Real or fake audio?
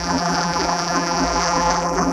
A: fake